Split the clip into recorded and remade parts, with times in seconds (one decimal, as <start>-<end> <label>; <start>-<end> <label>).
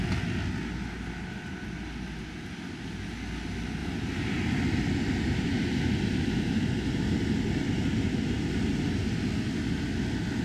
0.0-3.8 recorded; 3.8-4.4 remade; 4.4-10.4 recorded